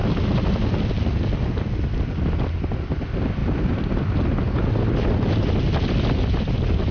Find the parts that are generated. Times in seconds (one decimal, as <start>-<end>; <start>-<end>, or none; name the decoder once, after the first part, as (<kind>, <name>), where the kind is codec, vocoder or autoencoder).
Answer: none